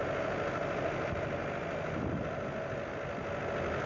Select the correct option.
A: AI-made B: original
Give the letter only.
B